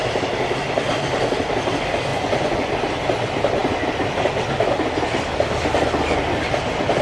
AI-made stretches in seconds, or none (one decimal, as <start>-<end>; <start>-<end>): 2.1-2.7